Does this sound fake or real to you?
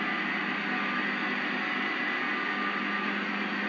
real